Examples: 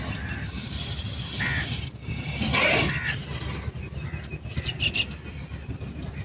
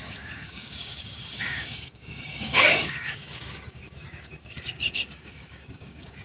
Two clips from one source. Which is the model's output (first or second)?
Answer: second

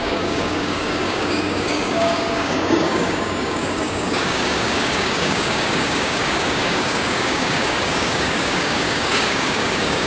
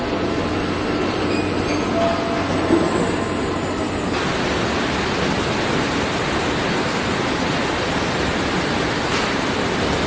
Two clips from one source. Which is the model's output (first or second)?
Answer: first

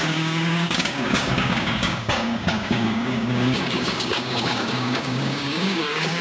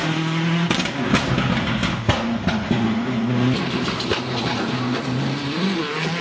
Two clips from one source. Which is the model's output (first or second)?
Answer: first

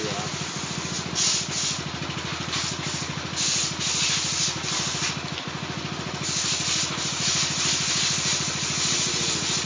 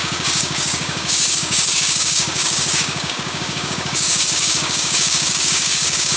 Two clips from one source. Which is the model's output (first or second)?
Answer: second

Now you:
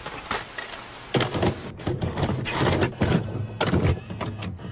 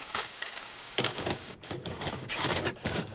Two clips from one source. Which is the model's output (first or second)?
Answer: second